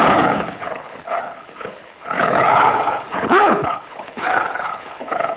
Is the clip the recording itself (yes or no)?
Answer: no